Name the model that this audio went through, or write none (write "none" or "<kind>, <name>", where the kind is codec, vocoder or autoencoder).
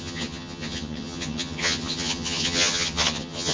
vocoder, HiFi-GAN